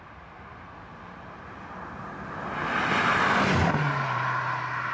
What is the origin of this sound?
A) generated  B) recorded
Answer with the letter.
B